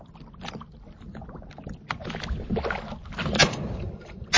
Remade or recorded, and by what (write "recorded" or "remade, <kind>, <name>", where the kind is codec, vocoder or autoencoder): recorded